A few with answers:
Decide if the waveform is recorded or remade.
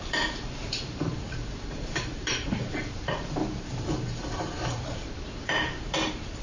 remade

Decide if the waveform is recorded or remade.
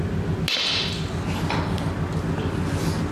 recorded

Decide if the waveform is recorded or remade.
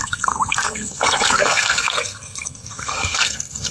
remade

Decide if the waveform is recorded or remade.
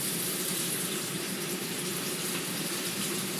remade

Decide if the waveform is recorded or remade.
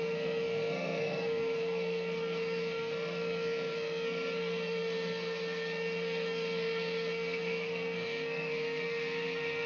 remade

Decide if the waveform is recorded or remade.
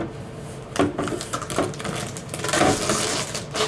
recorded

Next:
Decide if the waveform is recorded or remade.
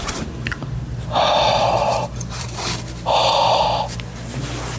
recorded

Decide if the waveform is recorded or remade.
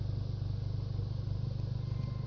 recorded